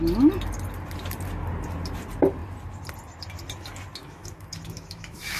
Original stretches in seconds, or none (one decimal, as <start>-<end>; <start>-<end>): 0.0-4.0